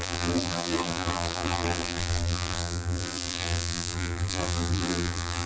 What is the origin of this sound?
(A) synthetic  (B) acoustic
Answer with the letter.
A